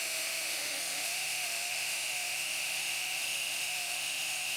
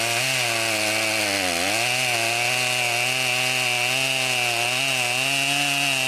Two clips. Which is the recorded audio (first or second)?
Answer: second